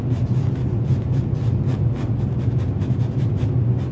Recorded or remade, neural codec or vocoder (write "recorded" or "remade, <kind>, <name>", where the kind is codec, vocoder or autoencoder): recorded